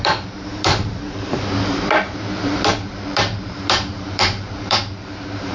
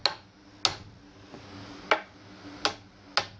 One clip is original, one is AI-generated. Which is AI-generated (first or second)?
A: first